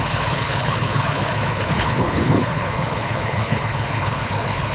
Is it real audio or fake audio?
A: fake